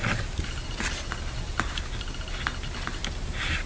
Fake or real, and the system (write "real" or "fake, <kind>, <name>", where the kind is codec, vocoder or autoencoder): real